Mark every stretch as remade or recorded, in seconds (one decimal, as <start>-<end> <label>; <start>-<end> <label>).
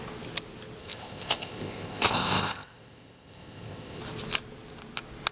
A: 0.0-0.8 recorded; 0.8-4.0 remade; 4.0-5.3 recorded